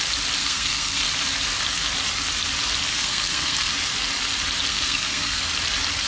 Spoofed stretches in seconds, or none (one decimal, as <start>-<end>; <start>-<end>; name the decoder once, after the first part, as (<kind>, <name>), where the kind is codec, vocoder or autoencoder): 0.4-1.0 (codec, SNAC); 2.9-3.7; 4.7-5.4